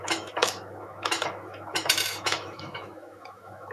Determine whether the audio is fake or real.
fake